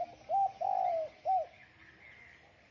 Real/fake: real